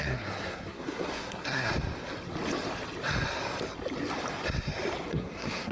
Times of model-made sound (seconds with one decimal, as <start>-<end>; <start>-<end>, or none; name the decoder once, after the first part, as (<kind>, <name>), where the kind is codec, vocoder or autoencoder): 0.0-1.7 (codec, SNAC); 5.1-5.7